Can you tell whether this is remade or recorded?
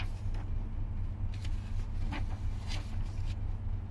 recorded